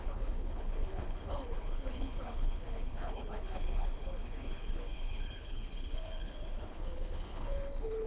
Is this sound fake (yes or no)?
yes